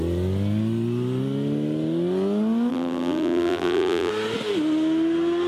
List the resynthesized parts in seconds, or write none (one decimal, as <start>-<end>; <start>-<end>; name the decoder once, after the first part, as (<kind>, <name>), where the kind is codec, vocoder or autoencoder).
2.7-4.1 (vocoder, BigVGAN v2)